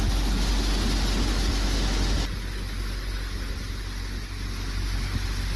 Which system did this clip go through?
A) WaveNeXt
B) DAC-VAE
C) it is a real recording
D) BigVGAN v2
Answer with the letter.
C